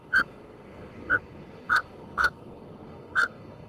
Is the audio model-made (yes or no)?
yes